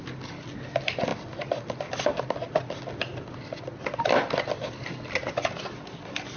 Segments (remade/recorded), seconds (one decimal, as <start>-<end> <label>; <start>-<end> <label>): 0.0-1.1 recorded; 1.1-2.6 remade; 2.6-6.4 recorded